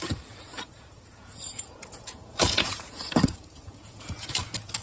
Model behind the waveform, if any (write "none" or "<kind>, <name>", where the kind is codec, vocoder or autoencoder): vocoder, Vocos